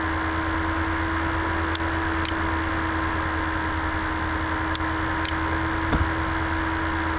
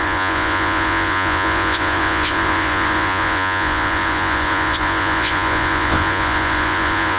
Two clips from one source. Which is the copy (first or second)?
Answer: second